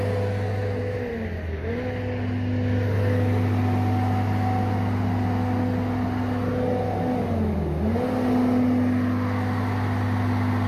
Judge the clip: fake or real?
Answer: real